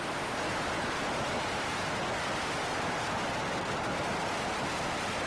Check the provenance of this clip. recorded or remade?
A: recorded